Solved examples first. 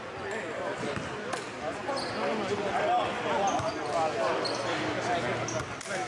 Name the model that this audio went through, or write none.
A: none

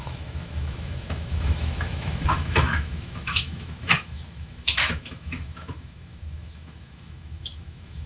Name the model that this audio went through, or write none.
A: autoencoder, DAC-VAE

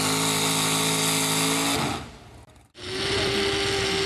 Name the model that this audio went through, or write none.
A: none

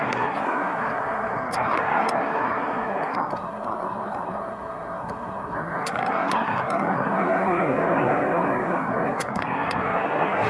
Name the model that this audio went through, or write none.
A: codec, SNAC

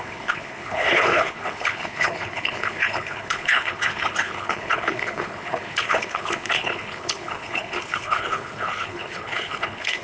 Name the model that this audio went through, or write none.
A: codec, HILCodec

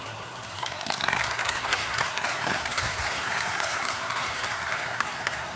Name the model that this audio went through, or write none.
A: codec, SNAC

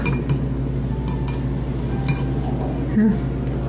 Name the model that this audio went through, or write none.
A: none